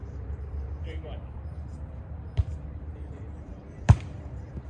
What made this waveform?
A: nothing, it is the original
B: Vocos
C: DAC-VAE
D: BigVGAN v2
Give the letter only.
D